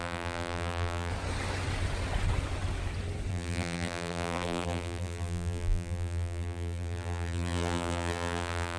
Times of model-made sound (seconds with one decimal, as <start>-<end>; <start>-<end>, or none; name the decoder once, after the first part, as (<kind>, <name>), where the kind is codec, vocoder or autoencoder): 0.0-1.1 (vocoder, BigVGAN v2); 3.3-8.8